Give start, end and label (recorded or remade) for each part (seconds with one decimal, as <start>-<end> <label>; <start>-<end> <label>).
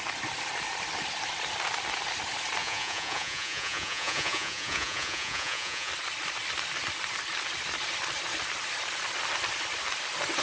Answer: 0.0-2.6 recorded; 2.6-5.9 remade; 5.9-10.4 recorded